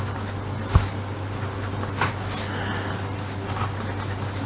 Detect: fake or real real